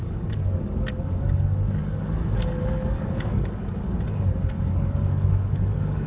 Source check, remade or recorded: remade